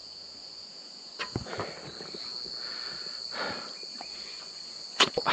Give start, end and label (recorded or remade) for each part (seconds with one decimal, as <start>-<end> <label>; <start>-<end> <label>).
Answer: 0.0-1.5 remade; 1.5-3.9 recorded; 3.9-5.3 remade